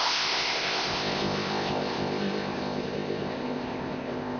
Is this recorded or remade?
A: remade